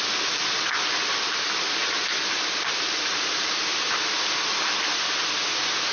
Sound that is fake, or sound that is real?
real